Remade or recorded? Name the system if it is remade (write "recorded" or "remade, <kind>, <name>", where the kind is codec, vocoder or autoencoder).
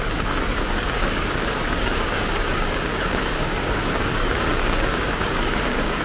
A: remade, codec, DAC